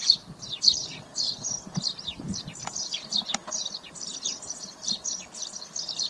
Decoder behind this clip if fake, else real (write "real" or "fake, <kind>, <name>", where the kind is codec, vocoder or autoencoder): real